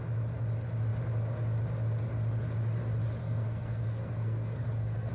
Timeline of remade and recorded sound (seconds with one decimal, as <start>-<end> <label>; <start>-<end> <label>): 0.0-3.2 recorded; 3.2-5.1 remade